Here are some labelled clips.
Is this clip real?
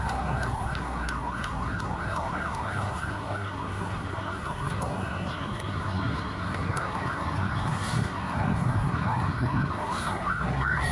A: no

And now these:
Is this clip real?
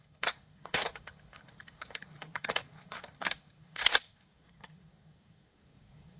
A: no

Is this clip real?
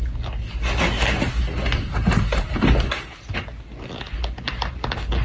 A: yes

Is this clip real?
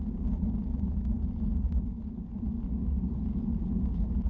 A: yes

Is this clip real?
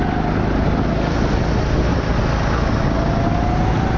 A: yes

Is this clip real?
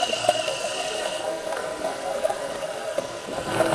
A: no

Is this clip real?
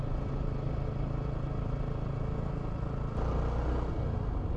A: yes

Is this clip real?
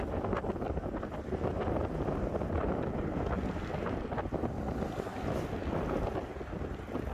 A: yes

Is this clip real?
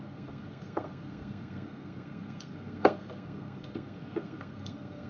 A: no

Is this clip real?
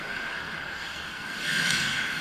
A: no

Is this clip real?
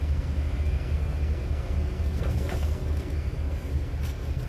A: no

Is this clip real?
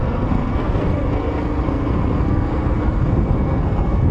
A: no